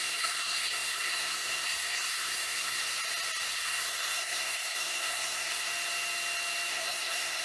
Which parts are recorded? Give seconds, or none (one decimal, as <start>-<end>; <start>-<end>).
2.8-3.5; 5.7-6.7